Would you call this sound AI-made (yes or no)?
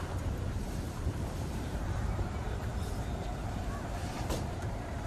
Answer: yes